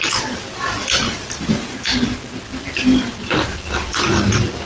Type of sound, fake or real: real